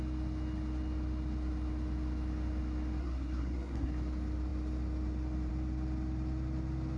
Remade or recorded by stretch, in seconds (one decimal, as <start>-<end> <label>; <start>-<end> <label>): 0.0-3.0 recorded; 3.0-3.9 remade; 3.9-7.0 recorded